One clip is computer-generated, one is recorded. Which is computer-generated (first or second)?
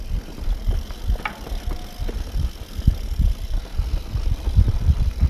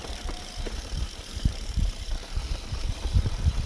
second